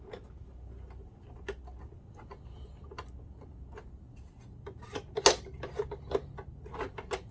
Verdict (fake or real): real